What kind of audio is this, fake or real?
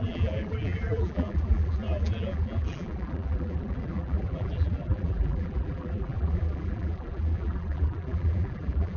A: fake